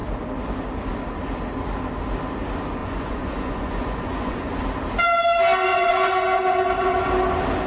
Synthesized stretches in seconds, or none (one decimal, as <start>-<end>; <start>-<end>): 2.8-4.6; 5.7-7.1

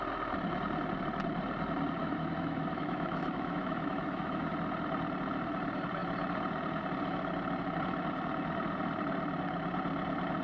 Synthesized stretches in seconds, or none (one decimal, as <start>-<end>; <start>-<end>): 2.0-4.5

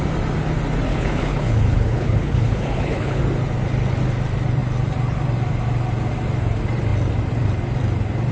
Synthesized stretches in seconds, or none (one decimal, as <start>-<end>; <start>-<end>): 0.9-3.2

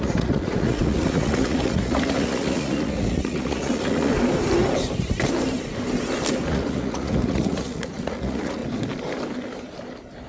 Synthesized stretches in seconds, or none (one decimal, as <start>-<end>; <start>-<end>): 0.0-4.1; 6.5-8.6